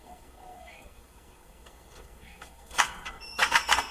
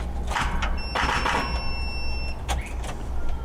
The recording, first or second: second